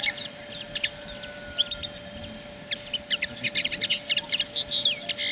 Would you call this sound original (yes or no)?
yes